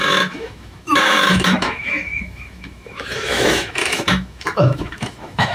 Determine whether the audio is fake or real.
fake